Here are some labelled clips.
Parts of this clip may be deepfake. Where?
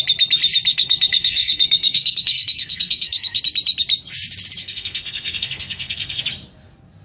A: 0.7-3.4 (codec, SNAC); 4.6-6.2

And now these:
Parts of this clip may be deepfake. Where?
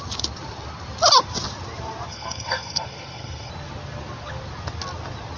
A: 2.1-3.5 (codec, SNAC)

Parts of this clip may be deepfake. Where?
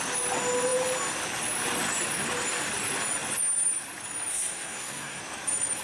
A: 4.3-5.2 (codec, SNAC)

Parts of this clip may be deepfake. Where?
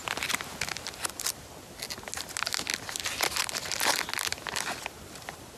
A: none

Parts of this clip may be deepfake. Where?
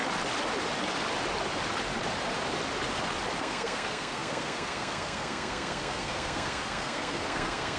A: 3.4-7.8 (codec, SNAC)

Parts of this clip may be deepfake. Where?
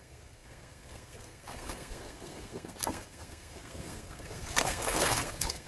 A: 0.0-5.7 (codec, SNAC)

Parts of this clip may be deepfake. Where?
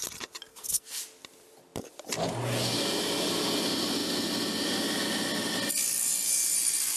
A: 0.5-1.0 (codec, SNAC)